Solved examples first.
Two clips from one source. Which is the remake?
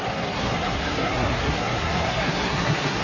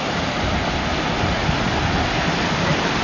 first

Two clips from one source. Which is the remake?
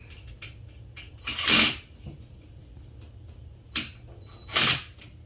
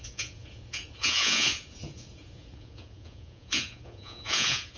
second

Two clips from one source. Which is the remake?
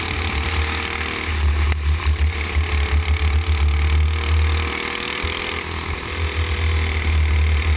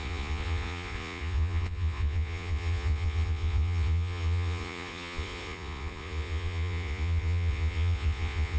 second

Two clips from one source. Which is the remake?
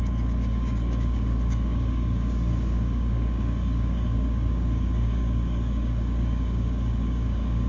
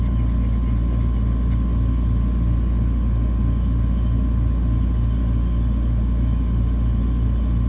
first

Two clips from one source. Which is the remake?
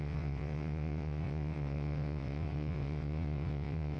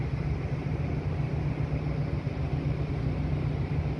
first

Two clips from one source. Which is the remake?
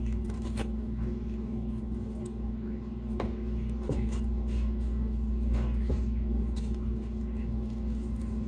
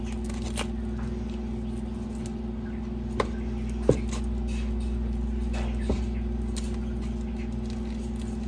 first